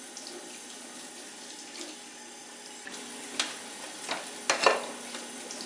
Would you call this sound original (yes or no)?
yes